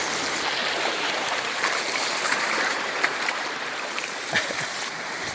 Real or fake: fake